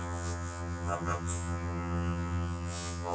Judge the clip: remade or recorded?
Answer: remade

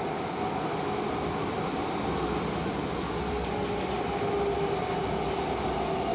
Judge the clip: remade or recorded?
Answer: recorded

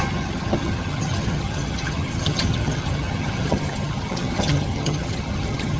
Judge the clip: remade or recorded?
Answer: remade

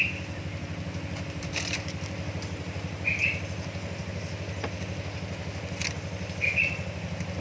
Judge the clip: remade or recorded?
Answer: recorded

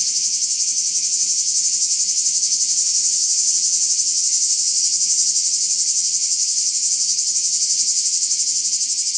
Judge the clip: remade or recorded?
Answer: remade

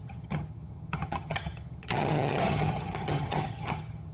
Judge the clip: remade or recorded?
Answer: remade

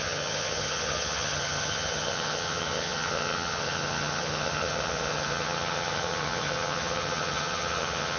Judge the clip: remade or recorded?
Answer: remade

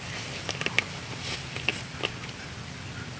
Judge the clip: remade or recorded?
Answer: recorded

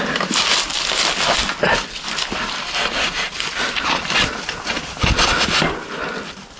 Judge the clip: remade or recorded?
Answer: recorded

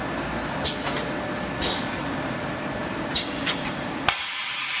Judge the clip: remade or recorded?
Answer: recorded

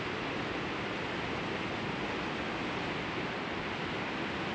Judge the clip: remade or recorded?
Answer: recorded